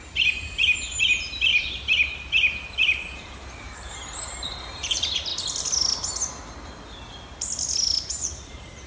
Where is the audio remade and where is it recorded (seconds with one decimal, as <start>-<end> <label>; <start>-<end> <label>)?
0.0-5.3 remade; 5.3-8.2 recorded; 8.2-8.9 remade